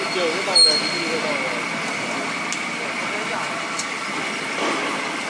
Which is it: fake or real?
real